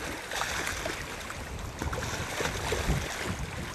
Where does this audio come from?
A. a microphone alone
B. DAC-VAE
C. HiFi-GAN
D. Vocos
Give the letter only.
A